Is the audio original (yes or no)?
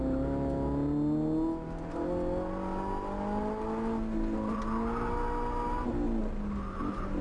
yes